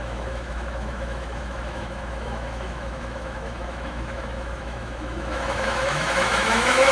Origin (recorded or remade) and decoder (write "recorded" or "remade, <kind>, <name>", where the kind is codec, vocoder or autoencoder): remade, autoencoder, DAC-VAE